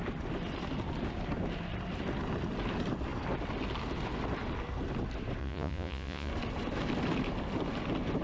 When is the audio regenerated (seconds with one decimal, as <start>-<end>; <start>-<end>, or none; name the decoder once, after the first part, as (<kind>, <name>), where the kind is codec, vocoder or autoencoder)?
5.4-6.3 (vocoder, Vocos)